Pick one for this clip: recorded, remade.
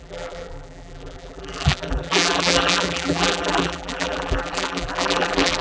remade